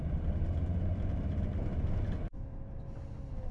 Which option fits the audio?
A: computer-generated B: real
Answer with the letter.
B